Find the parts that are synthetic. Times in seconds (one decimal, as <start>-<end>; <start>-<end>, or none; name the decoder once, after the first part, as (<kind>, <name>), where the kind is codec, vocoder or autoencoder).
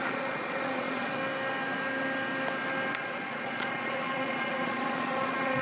0.0-1.2 (vocoder, Vocos); 2.9-5.6